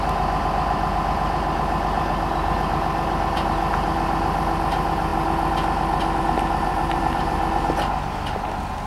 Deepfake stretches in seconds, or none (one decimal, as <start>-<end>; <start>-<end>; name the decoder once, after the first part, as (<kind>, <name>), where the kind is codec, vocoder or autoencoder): 6.7-7.4 (vocoder, BigVGAN v2)

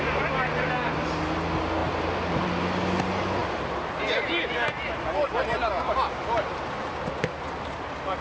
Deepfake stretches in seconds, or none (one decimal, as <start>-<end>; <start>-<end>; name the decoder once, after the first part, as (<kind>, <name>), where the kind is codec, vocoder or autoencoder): 1.8-2.6 (vocoder, BigVGAN v2)

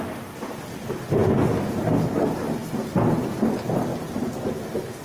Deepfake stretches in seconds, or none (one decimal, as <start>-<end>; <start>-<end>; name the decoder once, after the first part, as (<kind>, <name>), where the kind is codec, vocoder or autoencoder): none

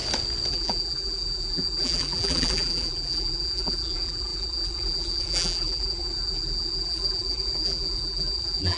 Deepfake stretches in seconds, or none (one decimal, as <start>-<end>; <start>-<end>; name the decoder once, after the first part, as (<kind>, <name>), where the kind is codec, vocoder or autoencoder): 0.5-8.8 (vocoder, BigVGAN v2)

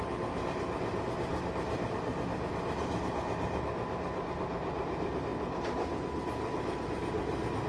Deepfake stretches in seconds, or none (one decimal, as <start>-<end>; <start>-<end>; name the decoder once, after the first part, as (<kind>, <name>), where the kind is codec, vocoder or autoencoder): none

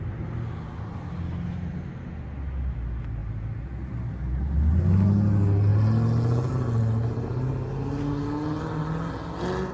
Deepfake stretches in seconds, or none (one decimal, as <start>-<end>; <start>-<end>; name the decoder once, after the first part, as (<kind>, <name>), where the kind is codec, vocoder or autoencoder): 7.0-7.7 (vocoder, BigVGAN v2)